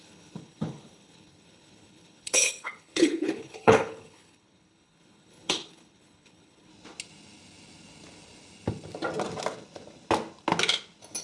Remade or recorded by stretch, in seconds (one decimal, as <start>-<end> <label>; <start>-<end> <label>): 0.0-6.7 remade; 6.7-11.2 recorded